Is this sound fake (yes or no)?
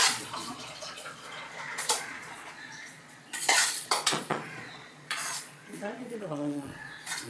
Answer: yes